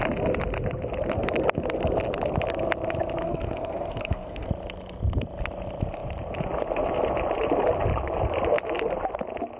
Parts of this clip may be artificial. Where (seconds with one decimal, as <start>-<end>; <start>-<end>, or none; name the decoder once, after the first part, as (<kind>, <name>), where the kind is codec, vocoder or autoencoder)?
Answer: 3.2-4.5 (codec, SNAC)